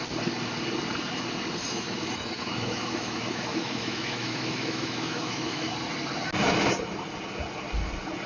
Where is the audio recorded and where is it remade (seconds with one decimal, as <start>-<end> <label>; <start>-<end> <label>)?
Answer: 0.0-1.7 recorded; 1.7-5.7 remade; 5.7-8.3 recorded